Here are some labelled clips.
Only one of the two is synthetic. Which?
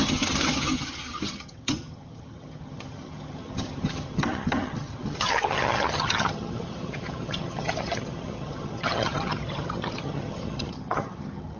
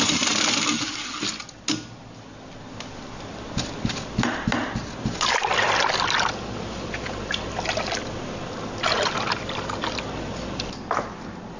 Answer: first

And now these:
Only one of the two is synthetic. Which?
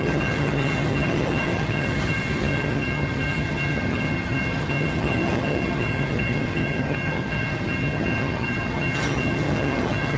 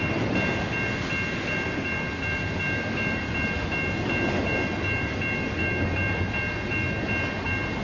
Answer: first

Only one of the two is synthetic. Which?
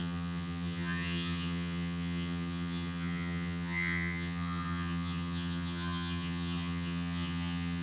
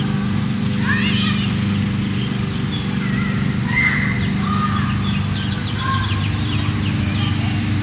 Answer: first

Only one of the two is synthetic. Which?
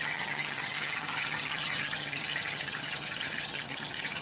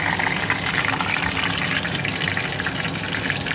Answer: first